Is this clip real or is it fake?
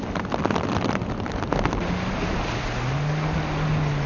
real